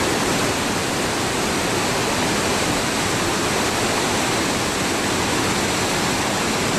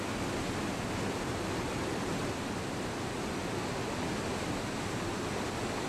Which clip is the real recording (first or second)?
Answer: second